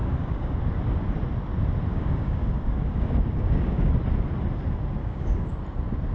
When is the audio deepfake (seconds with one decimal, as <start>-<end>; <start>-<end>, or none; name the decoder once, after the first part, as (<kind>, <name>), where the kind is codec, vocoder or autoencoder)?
0.0-0.6 (codec, DAC); 1.9-3.9; 5.0-5.5